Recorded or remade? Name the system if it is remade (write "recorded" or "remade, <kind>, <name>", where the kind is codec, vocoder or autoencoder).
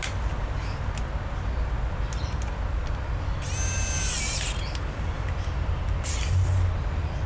recorded